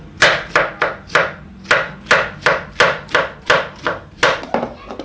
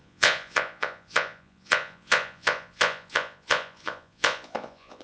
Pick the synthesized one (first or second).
second